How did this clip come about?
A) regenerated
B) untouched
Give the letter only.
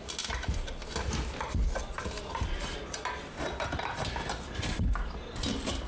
B